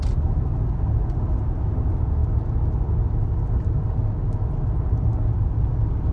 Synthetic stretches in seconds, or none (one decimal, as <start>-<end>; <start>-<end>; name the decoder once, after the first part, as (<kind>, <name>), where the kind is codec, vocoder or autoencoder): none